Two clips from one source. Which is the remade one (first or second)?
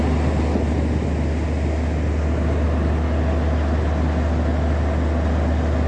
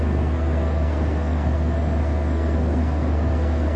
second